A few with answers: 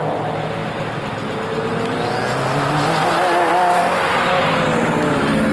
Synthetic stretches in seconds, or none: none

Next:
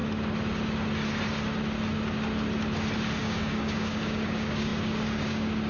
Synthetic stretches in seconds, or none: 3.2-5.7

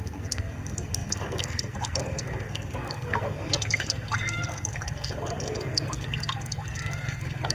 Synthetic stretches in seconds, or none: 0.0-7.5

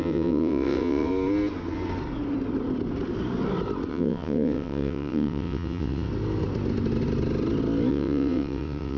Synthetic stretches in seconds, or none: 0.0-1.1; 3.9-6.1; 7.9-9.0

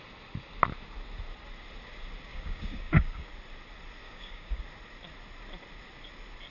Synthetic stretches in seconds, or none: 2.3-3.3; 4.0-4.6